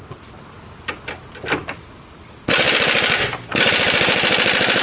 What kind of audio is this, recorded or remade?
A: recorded